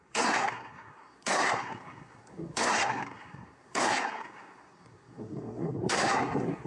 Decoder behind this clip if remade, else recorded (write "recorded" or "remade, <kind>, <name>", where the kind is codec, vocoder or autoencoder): remade, codec, SNAC